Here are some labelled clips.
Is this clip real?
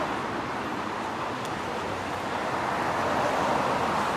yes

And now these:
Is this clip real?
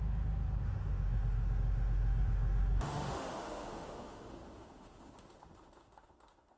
no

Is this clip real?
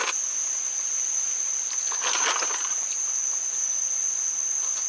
yes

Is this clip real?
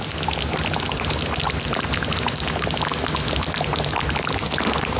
yes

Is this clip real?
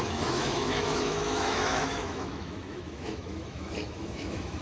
no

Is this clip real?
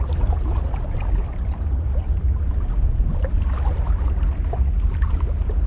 yes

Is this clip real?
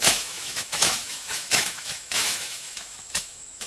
no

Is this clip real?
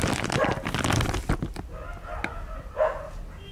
yes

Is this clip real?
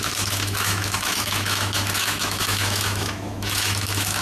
no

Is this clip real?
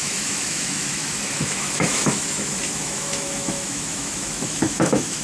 no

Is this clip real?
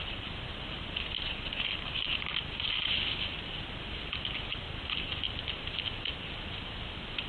yes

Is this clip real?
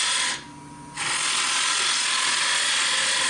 yes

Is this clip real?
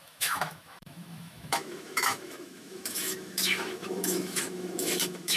no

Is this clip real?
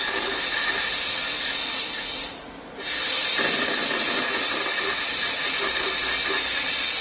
yes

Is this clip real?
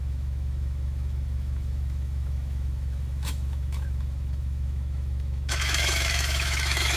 no